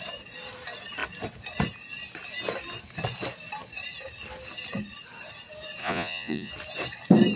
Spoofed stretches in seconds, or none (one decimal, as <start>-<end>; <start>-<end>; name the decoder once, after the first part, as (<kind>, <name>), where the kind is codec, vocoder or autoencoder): 5.8-6.5 (vocoder, Vocos)